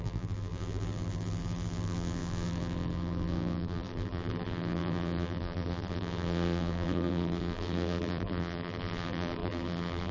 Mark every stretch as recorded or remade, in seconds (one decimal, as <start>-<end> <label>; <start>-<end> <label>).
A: 0.0-10.1 remade